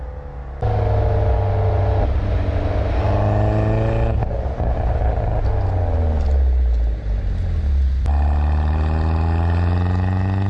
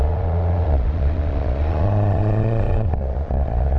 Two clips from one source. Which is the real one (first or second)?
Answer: first